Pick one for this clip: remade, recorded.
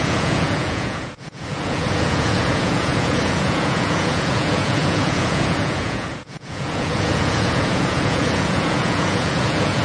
remade